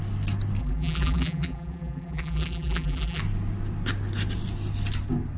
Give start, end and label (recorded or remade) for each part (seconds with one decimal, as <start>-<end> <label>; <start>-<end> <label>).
0.0-0.6 recorded; 0.6-3.2 remade; 3.2-5.4 recorded